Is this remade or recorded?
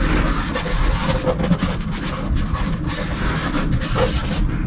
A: recorded